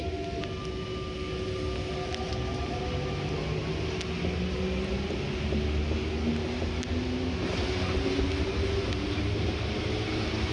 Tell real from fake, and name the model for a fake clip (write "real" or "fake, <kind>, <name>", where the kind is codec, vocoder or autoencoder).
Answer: real